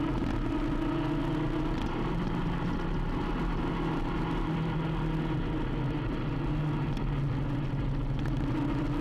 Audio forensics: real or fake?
real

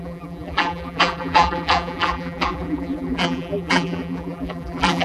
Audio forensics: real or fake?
fake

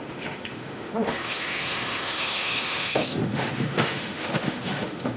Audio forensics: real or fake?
fake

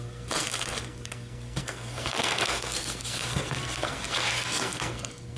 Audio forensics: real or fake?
fake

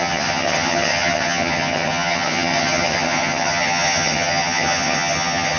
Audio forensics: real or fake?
fake